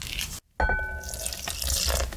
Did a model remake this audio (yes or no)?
no